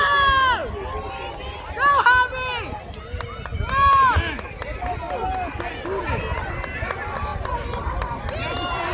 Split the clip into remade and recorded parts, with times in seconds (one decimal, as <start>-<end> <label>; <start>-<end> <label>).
0.0-8.9 recorded

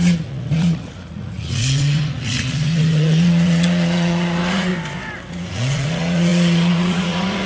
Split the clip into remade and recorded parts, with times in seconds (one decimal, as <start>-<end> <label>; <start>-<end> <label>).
0.0-4.7 remade; 4.7-5.3 recorded; 5.3-7.5 remade

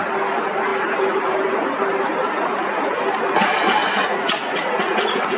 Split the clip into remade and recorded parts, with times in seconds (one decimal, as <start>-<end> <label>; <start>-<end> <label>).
0.0-2.2 recorded; 2.2-2.9 remade; 2.9-3.8 recorded; 3.8-5.4 remade

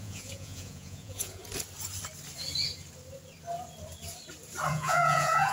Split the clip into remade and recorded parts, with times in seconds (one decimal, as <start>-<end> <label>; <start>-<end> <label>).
0.0-1.4 remade; 1.4-4.7 recorded; 4.7-5.5 remade